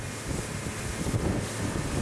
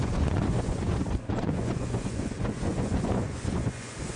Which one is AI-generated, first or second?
second